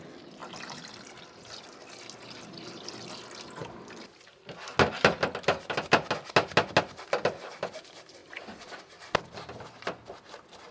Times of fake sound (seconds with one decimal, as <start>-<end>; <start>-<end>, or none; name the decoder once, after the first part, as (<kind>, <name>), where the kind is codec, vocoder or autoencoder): 0.4-1.2 (vocoder, BigVGAN v2); 8.2-8.8